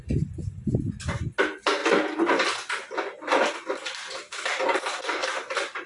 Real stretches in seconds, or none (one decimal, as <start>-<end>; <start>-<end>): 0.0-5.9